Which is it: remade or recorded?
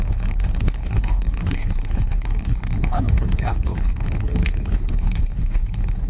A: remade